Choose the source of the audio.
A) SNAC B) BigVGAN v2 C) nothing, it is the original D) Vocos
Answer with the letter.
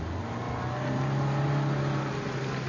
C